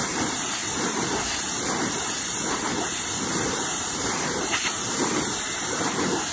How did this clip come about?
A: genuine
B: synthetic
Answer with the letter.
B